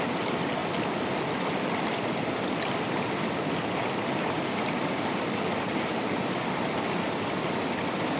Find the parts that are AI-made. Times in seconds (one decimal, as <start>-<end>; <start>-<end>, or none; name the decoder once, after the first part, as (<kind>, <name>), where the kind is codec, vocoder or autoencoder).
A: 0.6-4.7 (vocoder, BigVGAN v2); 5.9-6.4